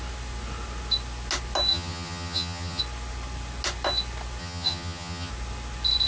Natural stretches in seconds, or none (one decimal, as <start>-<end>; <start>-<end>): 0.0-1.7; 2.8-4.4; 5.3-6.1